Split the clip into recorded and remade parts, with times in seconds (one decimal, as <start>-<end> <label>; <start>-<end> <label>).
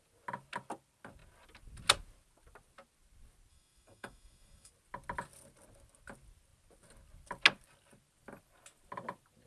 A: 0.0-3.5 recorded; 3.5-4.7 remade; 4.7-9.5 recorded